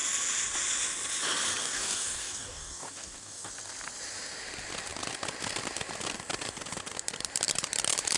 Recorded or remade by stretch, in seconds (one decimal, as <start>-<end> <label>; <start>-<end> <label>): 0.0-1.6 recorded; 1.6-3.5 remade; 3.5-8.2 recorded